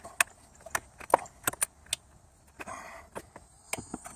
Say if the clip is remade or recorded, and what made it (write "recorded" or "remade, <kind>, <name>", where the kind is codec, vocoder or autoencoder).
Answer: recorded